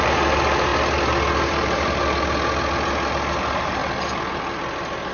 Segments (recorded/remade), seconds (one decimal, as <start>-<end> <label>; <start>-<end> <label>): 0.0-0.7 remade; 0.7-1.4 recorded; 1.4-2.0 remade; 2.0-3.4 recorded; 3.4-3.8 remade; 3.8-5.1 recorded